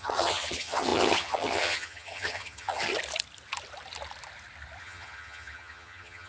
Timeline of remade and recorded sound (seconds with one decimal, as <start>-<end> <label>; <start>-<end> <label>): 0.0-2.9 remade; 2.9-4.8 recorded; 4.8-6.3 remade